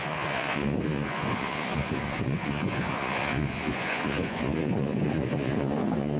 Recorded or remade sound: remade